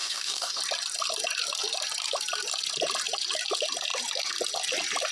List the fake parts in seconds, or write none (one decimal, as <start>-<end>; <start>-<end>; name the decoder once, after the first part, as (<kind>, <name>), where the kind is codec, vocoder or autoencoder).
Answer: 0.0-0.6 (codec, DAC)